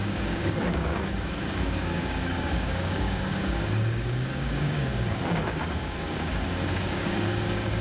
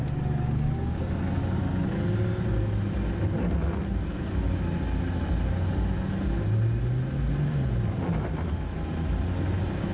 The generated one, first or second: first